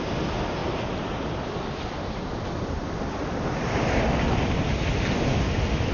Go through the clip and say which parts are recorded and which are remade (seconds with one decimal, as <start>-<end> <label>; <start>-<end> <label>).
0.0-0.6 recorded; 0.6-4.1 remade; 4.1-5.9 recorded